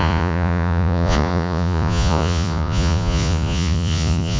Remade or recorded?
remade